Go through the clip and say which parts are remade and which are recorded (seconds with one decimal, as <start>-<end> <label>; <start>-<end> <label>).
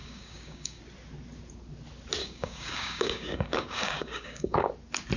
0.0-0.8 remade; 0.8-2.2 recorded; 2.2-4.7 remade; 4.7-5.2 recorded